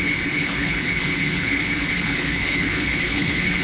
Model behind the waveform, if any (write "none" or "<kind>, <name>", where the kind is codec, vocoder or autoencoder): codec, HILCodec